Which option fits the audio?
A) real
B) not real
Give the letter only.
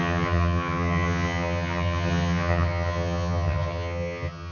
B